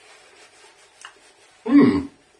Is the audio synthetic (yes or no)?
no